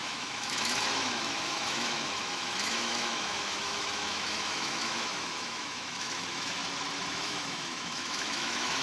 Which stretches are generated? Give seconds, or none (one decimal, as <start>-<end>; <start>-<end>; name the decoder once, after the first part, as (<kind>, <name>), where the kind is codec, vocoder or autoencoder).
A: 0.0-6.6 (autoencoder, DAC-VAE); 7.1-8.8